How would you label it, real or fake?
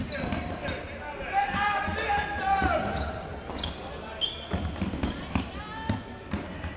real